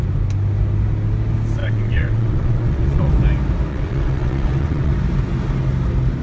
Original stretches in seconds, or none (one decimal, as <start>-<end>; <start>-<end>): 0.0-1.6; 3.1-3.7; 4.9-6.2